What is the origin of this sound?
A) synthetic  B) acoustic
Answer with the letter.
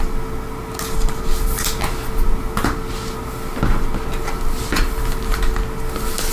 B